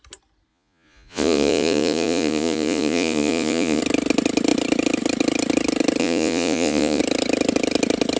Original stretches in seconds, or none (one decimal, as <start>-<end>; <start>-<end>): 0.0-0.5; 3.8-6.0; 7.0-8.2